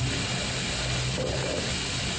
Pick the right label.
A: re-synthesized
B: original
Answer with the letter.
B